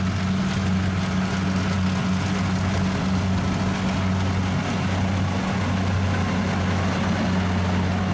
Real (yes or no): yes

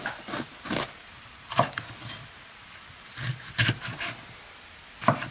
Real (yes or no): yes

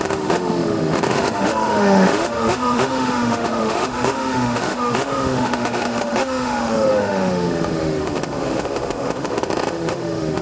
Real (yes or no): no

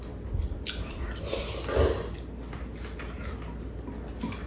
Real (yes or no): yes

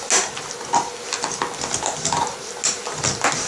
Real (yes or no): yes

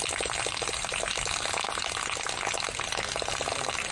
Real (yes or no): yes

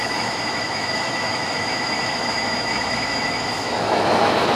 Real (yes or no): no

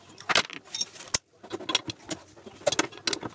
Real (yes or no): yes